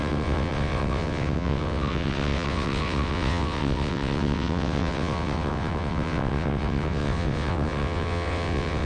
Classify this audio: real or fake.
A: fake